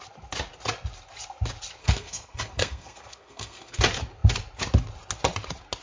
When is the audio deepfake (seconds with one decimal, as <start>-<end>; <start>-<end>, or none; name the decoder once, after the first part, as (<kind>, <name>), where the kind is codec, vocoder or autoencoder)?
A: 1.8-3.8 (codec, SNAC)